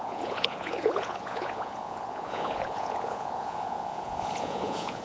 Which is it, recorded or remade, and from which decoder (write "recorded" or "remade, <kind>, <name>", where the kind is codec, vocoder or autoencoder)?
remade, vocoder, Vocos